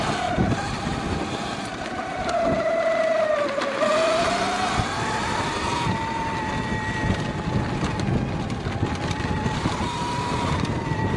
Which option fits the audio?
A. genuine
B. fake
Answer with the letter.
A